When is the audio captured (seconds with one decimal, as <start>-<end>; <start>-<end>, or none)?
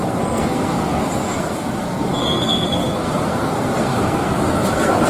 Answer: none